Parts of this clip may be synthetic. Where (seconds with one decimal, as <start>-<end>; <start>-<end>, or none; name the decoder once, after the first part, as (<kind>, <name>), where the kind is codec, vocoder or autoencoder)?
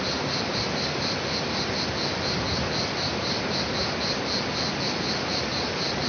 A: none